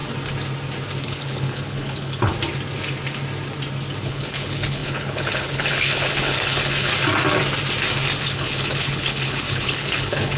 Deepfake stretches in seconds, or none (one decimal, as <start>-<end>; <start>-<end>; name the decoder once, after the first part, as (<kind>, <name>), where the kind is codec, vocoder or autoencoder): 1.0-2.3 (codec, HILCodec); 4.0-6.9; 8.2-10.4